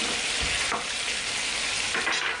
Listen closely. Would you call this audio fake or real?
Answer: real